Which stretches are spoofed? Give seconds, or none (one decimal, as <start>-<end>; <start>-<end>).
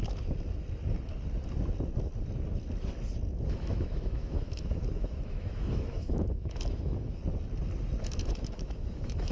3.5-7.2; 8.0-9.3